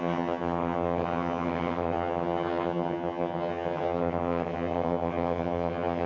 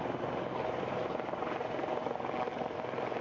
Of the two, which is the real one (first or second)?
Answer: second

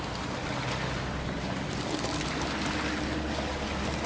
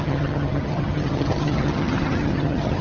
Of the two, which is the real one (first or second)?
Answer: first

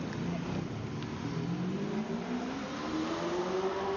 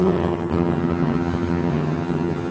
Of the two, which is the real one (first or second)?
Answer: first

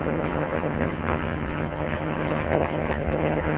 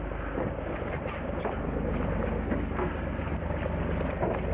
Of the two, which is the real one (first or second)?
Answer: second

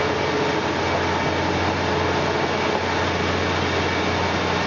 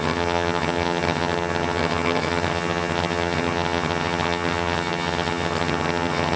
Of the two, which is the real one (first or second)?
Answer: first